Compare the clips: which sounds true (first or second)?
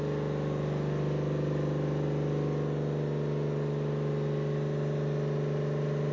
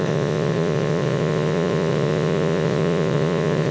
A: first